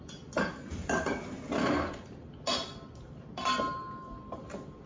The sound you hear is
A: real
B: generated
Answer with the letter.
A